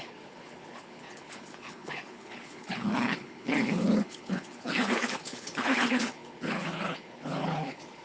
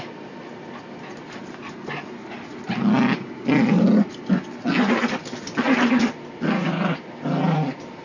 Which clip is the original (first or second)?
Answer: second